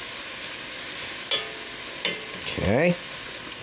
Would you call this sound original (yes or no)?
yes